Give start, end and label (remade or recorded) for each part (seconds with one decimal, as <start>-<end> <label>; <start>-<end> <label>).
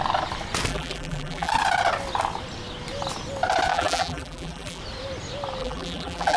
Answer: 0.0-0.7 recorded; 0.7-1.5 remade; 1.5-3.7 recorded; 3.7-4.8 remade; 4.8-5.6 recorded; 5.6-6.4 remade